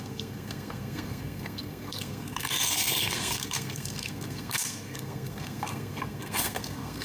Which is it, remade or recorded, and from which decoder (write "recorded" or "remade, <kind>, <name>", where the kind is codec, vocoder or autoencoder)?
remade, codec, SNAC